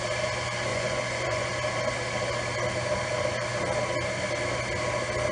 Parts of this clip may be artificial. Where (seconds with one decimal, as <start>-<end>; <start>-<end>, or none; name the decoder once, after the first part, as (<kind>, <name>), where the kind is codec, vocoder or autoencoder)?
0.7-1.5 (vocoder, Vocos)